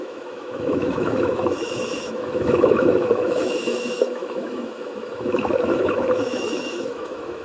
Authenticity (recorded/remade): remade